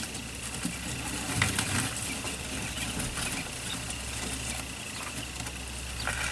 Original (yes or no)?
yes